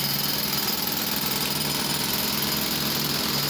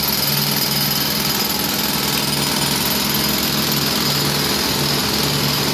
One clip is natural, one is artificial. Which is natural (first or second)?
second